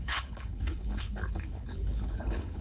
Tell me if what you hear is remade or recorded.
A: remade